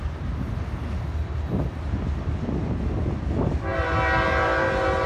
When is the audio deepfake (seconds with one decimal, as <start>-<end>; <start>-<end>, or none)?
none